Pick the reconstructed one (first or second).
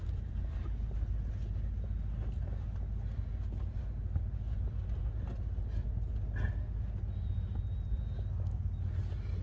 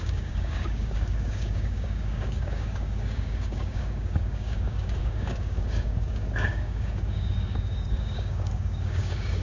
second